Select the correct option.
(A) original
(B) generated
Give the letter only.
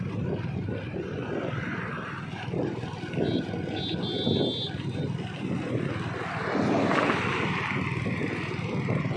A